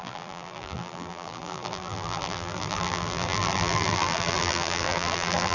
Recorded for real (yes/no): no